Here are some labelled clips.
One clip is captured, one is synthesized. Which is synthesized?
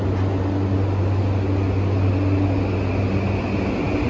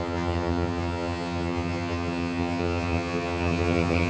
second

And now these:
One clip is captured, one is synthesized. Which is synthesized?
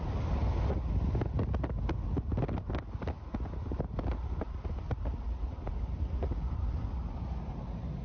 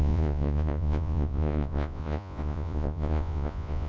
second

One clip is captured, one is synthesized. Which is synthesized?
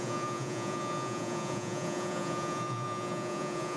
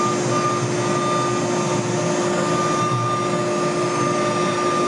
first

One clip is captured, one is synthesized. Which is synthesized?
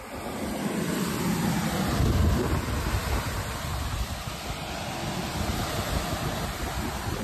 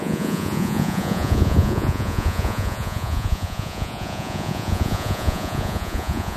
second